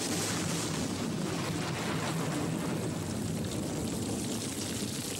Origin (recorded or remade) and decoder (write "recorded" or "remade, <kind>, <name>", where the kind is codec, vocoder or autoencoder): recorded